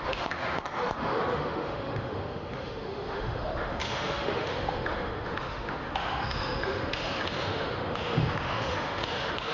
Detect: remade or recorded remade